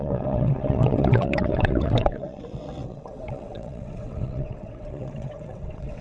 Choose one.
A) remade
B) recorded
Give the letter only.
A